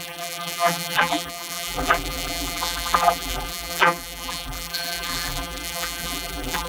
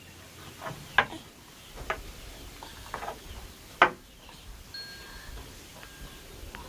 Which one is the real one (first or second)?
second